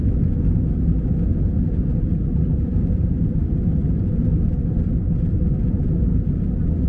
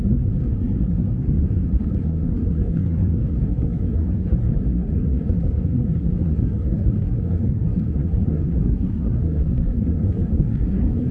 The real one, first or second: first